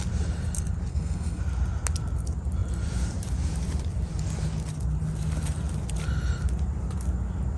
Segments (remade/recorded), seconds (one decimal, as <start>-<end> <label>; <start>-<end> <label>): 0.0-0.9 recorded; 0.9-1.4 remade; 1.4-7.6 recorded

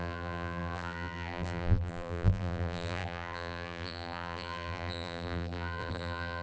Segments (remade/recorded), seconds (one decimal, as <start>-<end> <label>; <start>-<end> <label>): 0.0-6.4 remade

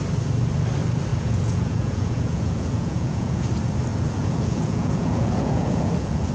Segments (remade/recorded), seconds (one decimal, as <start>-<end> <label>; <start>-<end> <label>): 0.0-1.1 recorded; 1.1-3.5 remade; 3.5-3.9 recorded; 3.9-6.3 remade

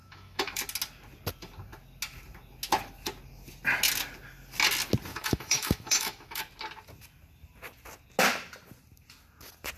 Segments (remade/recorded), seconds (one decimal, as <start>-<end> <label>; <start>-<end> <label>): 0.0-0.6 remade; 0.6-5.1 recorded; 5.1-6.4 remade; 6.4-9.8 recorded